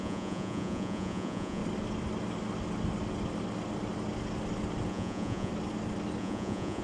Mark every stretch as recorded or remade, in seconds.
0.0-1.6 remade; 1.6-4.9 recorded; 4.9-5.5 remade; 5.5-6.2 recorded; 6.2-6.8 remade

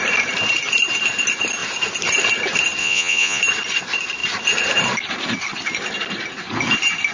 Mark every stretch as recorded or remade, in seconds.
0.0-2.8 recorded; 2.8-3.4 remade; 3.4-7.1 recorded

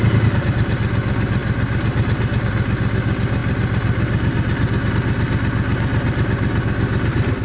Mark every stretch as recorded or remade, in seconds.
0.0-7.4 recorded

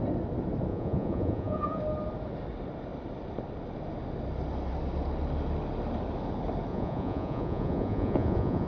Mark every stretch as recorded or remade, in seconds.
0.0-0.7 recorded; 0.7-1.8 remade; 1.8-6.7 recorded; 6.7-8.7 remade